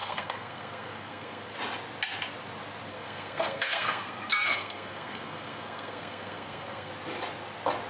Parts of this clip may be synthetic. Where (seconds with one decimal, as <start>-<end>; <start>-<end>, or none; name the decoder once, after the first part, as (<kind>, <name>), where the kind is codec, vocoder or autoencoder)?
0.0-1.5 (codec, SNAC); 2.9-6.9